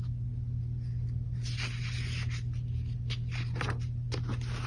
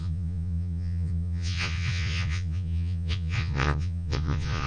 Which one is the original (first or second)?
first